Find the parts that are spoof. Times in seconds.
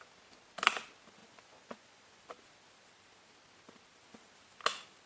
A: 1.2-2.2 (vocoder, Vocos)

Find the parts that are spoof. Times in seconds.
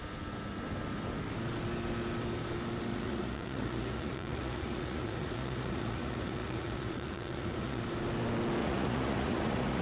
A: 2.9-7.8 (vocoder, Vocos); 8.6-9.8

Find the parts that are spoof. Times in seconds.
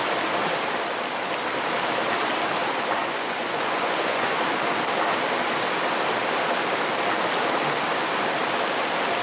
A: 3.0-4.4 (vocoder, Vocos)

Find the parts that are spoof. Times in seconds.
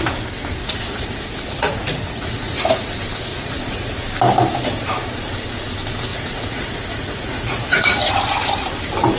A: 0.6-2.9 (vocoder, Vocos); 3.3-4.0; 6.1-8.1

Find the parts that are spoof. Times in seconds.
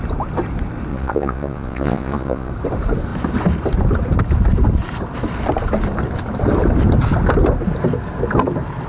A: 0.9-2.5 (vocoder, Vocos)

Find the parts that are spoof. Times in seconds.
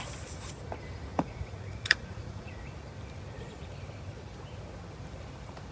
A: 1.1-2.6 (vocoder, Vocos)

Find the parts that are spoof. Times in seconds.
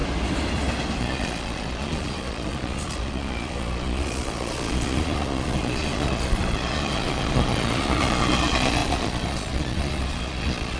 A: 1.0-10.8 (vocoder, Vocos)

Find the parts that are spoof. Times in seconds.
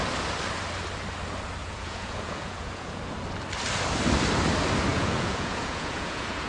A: 1.6-3.0 (vocoder, Vocos); 4.9-6.5